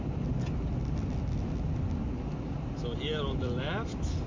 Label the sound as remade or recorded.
recorded